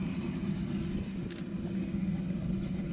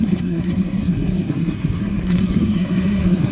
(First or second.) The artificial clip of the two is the second